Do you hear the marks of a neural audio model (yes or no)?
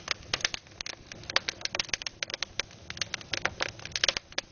no